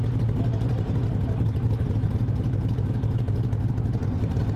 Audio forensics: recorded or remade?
remade